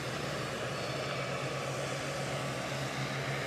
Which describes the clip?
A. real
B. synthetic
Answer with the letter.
A